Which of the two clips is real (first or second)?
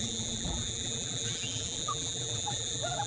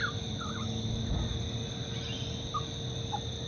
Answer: second